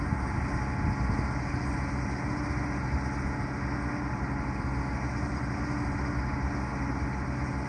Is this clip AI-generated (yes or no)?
no